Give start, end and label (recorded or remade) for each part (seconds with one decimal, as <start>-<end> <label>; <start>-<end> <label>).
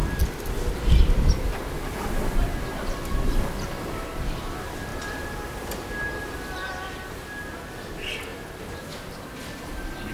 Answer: 0.0-10.1 recorded